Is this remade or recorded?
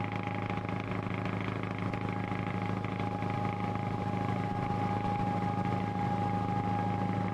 recorded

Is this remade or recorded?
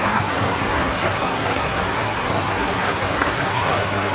remade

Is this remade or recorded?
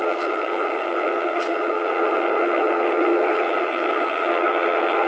remade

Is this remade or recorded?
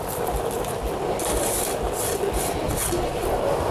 recorded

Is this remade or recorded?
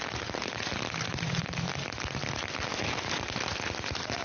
recorded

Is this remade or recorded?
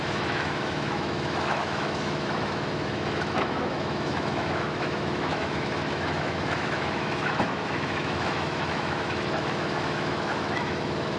remade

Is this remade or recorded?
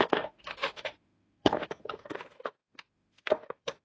remade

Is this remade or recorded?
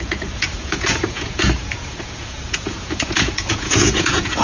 remade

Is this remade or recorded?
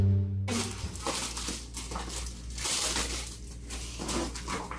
recorded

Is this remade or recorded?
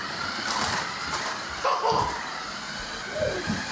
remade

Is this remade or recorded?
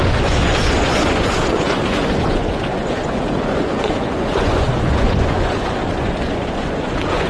remade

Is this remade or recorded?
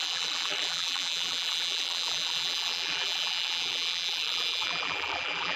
remade